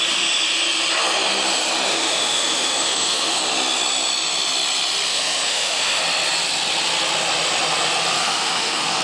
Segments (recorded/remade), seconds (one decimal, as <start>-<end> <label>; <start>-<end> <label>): 0.0-1.9 recorded; 1.9-3.4 remade; 3.4-5.1 recorded; 5.1-6.0 remade; 6.0-8.2 recorded; 8.2-9.0 remade